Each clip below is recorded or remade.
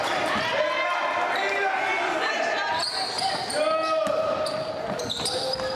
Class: recorded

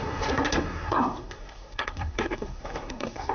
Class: remade